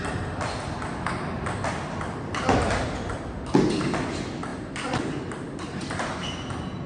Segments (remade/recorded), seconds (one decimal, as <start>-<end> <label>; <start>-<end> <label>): 0.0-6.9 recorded